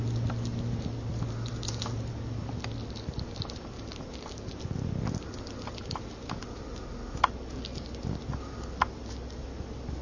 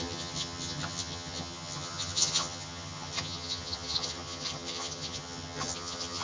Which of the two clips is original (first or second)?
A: first